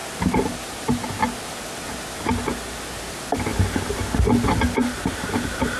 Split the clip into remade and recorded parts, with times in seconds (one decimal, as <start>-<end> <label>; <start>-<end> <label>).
0.0-5.8 recorded